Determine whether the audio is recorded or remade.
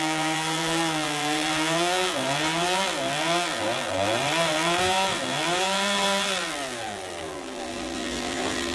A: remade